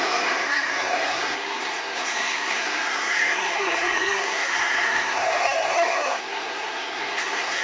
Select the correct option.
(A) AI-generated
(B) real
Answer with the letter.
A